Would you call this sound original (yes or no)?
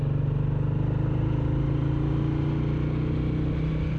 yes